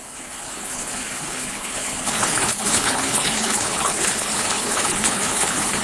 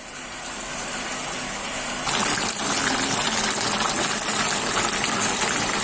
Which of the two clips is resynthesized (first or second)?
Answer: first